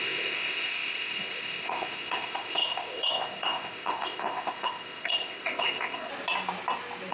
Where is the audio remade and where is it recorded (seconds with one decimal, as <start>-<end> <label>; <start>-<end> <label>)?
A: 0.0-6.1 remade; 6.1-7.1 recorded